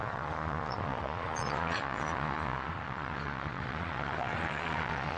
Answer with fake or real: fake